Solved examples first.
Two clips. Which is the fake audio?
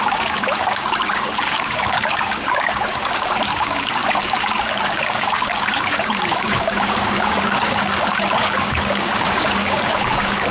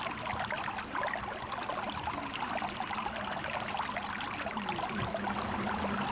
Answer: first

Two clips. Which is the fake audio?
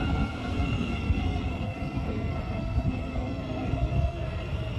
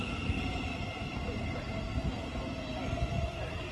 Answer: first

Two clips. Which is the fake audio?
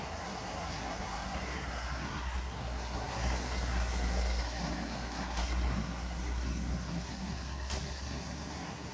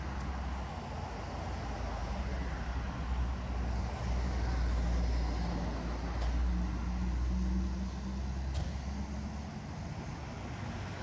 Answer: first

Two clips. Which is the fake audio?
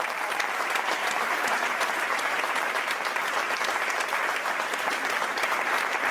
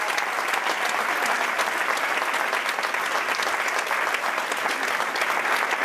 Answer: first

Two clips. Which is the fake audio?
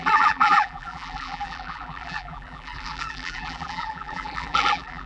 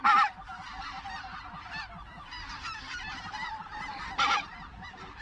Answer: first